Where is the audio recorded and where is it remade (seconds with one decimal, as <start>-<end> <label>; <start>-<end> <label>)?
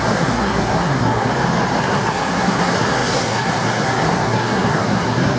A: 0.0-1.3 remade; 1.3-1.8 recorded; 1.8-5.4 remade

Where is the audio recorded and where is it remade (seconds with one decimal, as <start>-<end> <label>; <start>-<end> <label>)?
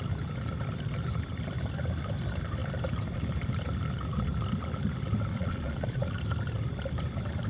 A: 0.0-5.3 recorded; 5.3-6.1 remade; 6.1-7.5 recorded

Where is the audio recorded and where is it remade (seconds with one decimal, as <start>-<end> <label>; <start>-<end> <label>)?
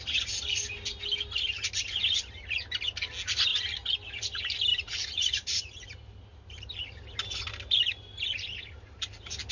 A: 0.0-4.7 recorded; 4.7-7.4 remade; 7.4-9.5 recorded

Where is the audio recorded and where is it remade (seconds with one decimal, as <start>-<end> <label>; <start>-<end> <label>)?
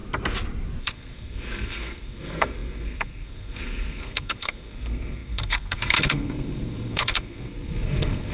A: 0.0-0.8 recorded; 0.8-8.3 remade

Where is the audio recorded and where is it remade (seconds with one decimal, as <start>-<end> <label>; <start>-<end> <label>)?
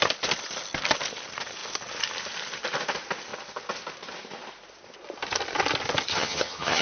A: 0.0-6.1 recorded; 6.1-6.8 remade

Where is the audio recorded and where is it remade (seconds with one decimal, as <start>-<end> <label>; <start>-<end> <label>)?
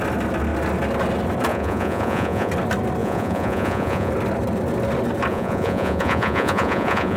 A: 0.0-1.5 recorded; 1.5-2.5 remade; 2.5-3.0 recorded; 3.0-4.1 remade; 4.1-5.3 recorded; 5.3-7.2 remade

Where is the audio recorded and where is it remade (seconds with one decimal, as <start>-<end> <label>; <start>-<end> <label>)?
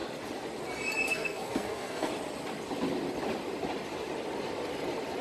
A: 0.0-1.1 recorded; 1.1-2.1 remade; 2.1-5.2 recorded